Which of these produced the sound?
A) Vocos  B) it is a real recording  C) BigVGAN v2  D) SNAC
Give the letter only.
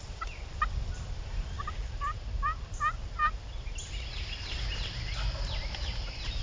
B